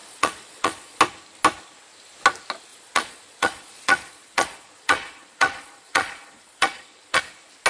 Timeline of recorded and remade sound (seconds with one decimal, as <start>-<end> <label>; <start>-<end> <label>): 0.0-1.0 remade; 1.0-2.7 recorded; 2.7-7.2 remade; 7.2-7.7 recorded